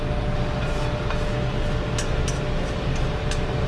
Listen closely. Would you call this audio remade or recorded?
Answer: recorded